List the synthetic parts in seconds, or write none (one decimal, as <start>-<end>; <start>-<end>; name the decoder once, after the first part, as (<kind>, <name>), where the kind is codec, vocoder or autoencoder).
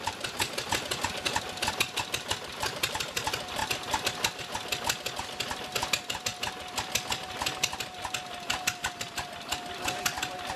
none